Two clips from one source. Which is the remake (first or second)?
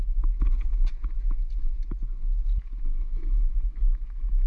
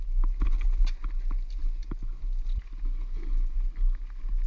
first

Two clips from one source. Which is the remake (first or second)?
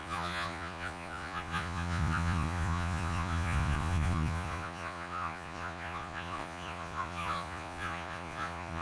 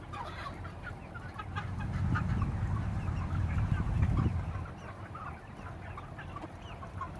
first